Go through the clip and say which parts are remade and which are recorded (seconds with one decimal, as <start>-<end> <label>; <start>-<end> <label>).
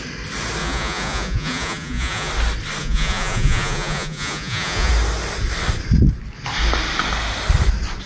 0.0-0.6 recorded; 0.6-2.3 remade; 2.3-2.8 recorded; 2.8-4.9 remade; 4.9-8.1 recorded